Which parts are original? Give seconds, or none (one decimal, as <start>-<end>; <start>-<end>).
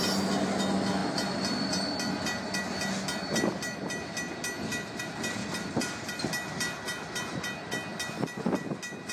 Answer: 0.0-5.4; 6.1-9.1